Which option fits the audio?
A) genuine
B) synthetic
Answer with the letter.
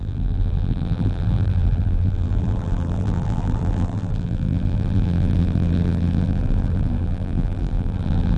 B